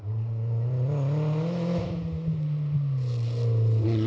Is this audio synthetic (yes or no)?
no